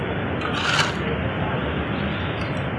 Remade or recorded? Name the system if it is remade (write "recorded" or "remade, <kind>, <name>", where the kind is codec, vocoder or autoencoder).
recorded